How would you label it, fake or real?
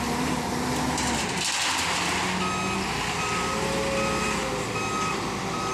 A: real